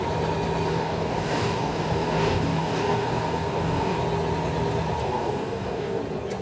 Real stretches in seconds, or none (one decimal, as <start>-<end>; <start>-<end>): 0.0-0.7; 4.0-5.0; 6.0-6.4